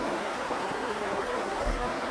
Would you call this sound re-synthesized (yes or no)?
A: yes